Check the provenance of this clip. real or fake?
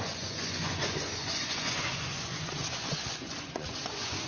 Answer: fake